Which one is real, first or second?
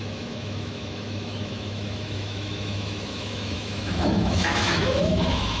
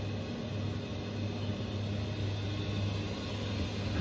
second